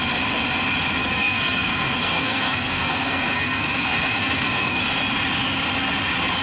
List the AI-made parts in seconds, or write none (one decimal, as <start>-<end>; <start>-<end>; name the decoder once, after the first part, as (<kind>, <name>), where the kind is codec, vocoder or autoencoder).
1.0-4.8 (codec, SNAC)